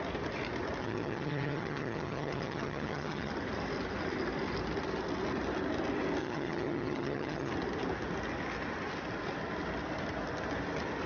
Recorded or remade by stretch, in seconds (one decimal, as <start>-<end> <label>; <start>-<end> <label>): 0.0-0.8 recorded; 0.8-3.3 remade; 3.3-6.2 recorded; 6.2-7.5 remade; 7.5-11.1 recorded